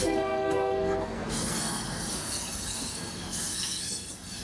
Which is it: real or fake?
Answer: fake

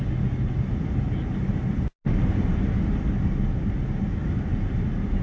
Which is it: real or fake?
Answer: real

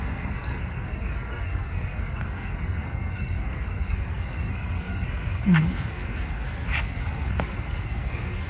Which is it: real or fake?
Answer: fake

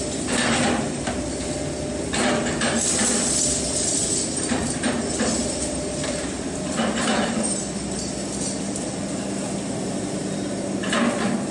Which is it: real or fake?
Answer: real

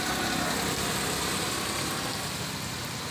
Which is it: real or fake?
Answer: real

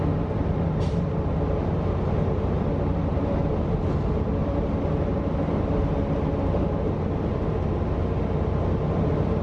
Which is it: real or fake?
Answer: real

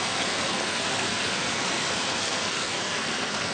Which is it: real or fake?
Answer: fake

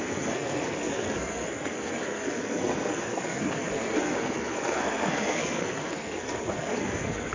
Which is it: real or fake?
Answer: fake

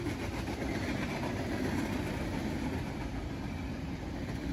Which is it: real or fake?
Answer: real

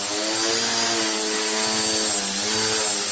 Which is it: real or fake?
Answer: real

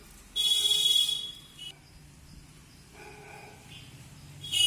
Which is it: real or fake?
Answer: real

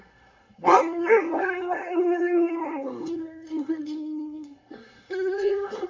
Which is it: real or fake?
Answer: fake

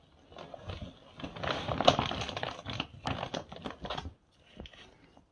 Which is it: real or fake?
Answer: real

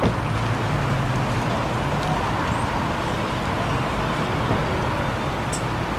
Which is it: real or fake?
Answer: real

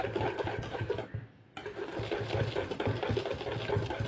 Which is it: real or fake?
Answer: real